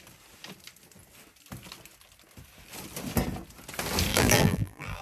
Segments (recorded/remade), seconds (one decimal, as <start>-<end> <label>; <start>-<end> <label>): 0.0-4.1 recorded; 4.1-5.0 remade